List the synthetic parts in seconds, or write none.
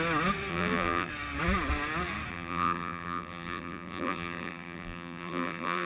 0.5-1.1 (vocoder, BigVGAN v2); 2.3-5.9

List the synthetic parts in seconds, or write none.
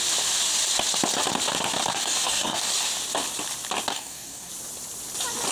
1.9-2.7 (codec, DAC); 3.9-4.5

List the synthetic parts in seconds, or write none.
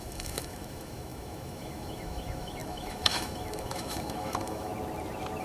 0.0-4.7 (autoencoder, DAC-VAE)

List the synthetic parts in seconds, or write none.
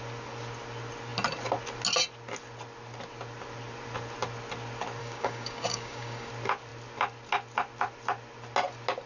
5.0-6.3 (codec, DAC)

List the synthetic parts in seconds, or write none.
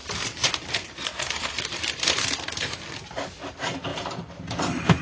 0.0-2.7 (vocoder, BigVGAN v2); 3.9-5.0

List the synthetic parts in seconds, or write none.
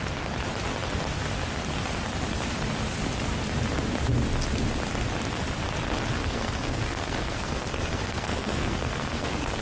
6.2-9.6 (codec, SNAC)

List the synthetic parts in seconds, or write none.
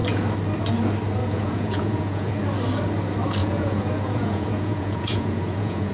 1.2-2.3 (vocoder, Vocos); 3.4-5.9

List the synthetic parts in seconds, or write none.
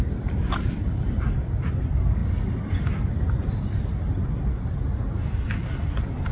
none